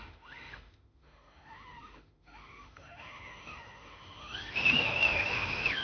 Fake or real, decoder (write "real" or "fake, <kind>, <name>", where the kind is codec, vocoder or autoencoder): fake, autoencoder, DAC-VAE